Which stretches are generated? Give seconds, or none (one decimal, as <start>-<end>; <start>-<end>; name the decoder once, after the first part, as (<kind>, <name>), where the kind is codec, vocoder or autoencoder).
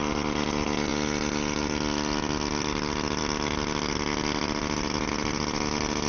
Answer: none